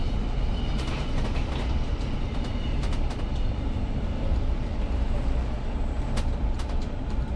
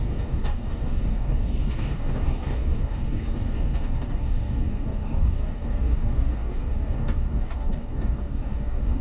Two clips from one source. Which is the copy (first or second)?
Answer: second